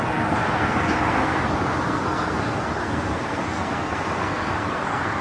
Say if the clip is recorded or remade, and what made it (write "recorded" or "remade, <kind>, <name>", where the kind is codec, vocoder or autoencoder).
remade, codec, SNAC